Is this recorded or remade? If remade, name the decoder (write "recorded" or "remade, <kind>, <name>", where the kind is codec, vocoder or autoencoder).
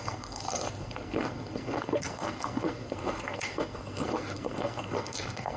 remade, codec, SNAC